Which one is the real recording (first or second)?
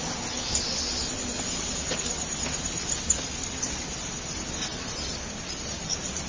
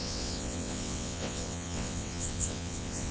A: first